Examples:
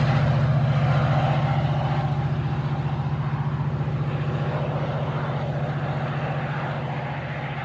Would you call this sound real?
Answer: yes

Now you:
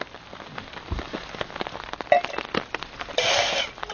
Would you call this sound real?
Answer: yes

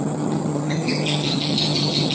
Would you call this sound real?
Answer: no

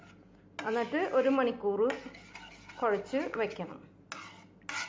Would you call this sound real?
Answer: yes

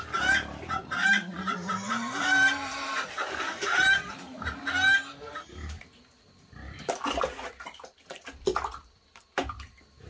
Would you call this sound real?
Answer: yes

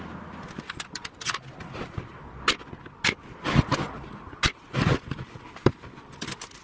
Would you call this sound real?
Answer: yes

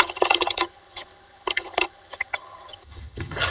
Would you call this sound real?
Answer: no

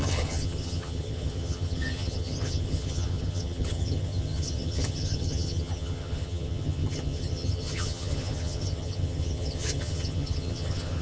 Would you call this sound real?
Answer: no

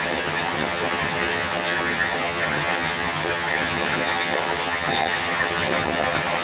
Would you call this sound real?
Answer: no